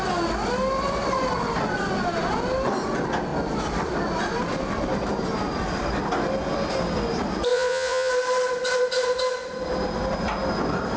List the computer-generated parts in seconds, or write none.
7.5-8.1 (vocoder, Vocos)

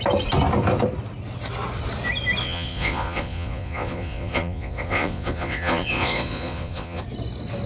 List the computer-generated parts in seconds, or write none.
2.4-7.0 (vocoder, Vocos)

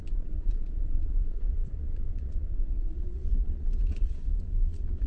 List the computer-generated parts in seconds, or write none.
0.0-5.1 (vocoder, Vocos)

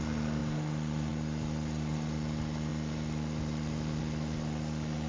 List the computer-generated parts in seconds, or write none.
none

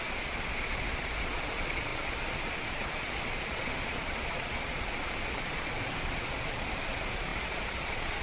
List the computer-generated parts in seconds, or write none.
0.0-8.2 (vocoder, Vocos)

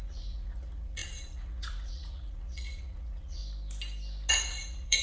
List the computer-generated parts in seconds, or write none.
0.0-3.4 (vocoder, Vocos); 4.3-5.0

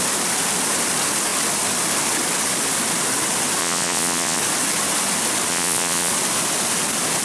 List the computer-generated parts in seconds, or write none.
3.6-4.4 (vocoder, Vocos); 5.5-6.1